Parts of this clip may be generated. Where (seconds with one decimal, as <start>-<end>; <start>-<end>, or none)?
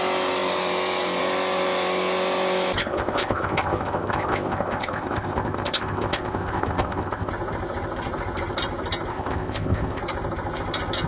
2.8-7.3; 9.1-10.0